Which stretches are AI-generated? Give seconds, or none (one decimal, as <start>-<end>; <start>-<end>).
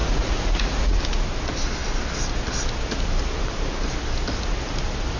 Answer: 0.0-1.0